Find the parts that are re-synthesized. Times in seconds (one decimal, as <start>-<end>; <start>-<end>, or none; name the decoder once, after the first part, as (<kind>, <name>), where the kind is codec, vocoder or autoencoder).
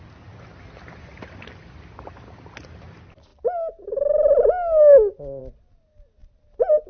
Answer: none